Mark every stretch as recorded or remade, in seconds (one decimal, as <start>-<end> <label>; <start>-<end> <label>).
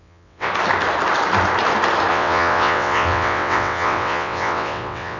0.0-0.5 remade; 0.5-2.1 recorded; 2.1-5.2 remade